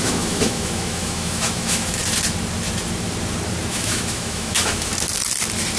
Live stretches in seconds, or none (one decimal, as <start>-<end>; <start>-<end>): 2.0-3.7; 4.9-5.8